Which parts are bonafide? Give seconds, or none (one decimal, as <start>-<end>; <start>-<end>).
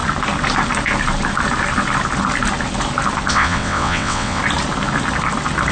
0.0-3.3; 4.4-5.7